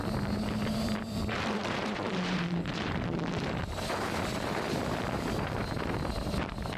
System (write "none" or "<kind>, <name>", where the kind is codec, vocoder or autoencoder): vocoder, BigVGAN v2